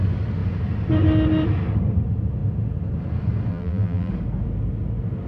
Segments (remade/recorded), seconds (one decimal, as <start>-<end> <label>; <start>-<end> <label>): 0.0-3.5 recorded; 3.5-4.1 remade; 4.1-5.3 recorded